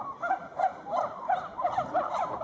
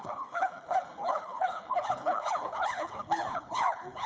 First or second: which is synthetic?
second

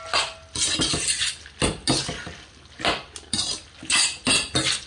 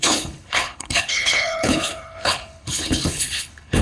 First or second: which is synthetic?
second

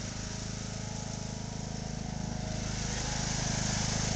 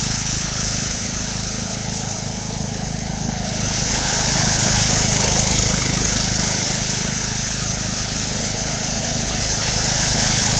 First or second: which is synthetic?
second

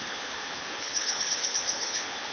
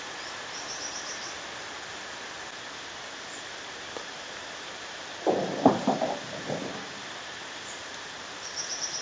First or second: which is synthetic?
first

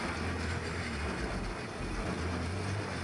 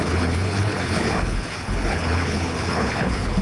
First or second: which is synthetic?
second